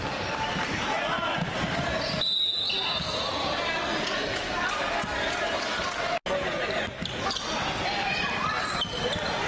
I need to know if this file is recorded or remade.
recorded